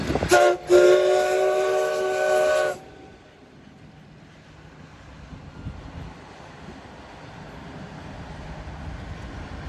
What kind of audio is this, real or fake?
real